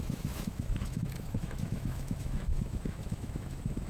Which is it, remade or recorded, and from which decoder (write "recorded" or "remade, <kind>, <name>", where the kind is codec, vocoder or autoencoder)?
remade, autoencoder, DAC-VAE